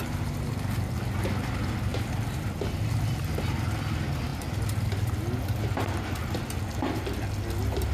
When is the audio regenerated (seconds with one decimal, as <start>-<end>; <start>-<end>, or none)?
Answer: none